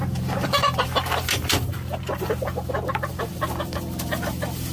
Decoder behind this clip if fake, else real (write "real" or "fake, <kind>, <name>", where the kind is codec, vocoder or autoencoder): fake, vocoder, BigVGAN v2